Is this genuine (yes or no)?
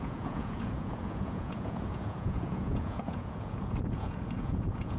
no